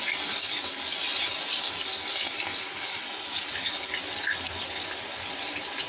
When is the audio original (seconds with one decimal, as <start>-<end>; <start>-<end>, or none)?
0.0-5.9